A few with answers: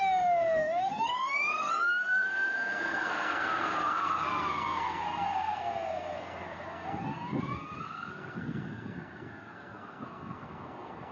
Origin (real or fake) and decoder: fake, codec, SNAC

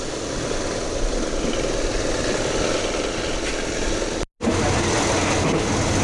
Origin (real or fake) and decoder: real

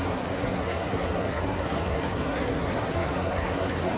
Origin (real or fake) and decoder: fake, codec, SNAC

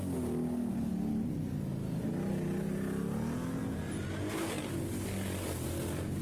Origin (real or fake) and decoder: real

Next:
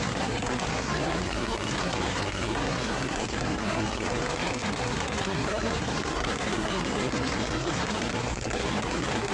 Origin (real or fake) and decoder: fake, codec, SNAC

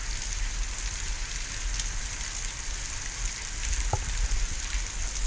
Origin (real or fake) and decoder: real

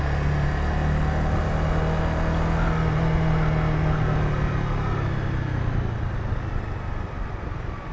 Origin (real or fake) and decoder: real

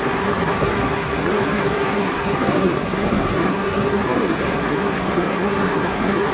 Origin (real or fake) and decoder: fake, codec, SNAC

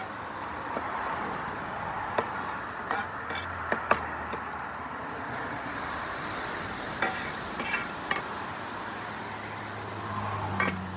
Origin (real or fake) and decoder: real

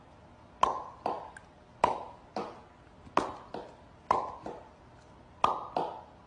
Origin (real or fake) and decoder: real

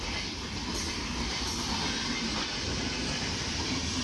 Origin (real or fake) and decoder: real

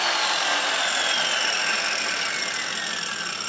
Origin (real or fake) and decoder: real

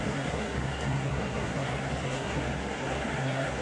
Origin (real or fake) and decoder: fake, codec, SNAC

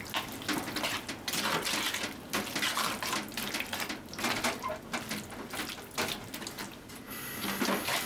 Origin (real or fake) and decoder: real